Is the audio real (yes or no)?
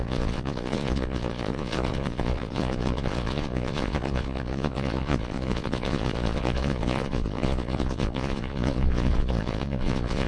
no